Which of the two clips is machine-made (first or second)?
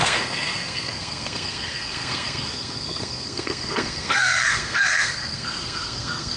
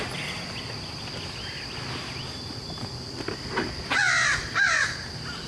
first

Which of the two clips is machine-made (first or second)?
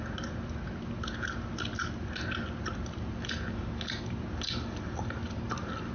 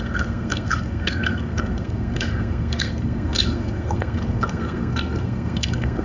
second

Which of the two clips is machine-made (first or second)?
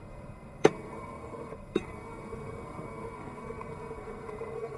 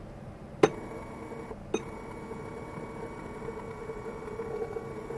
first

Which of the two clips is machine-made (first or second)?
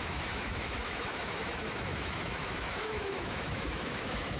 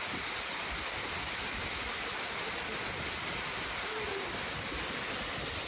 first